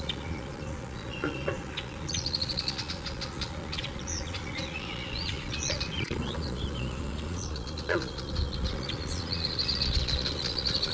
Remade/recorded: remade